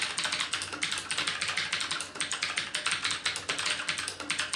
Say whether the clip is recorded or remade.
recorded